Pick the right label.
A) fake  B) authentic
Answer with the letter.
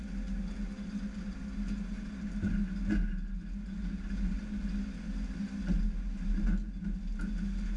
B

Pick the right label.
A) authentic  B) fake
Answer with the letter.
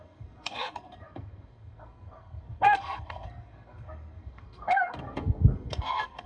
B